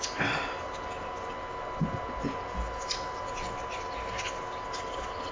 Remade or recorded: recorded